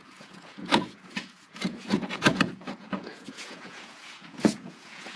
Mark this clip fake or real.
fake